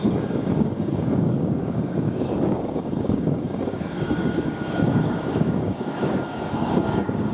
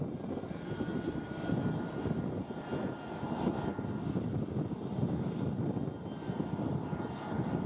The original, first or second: second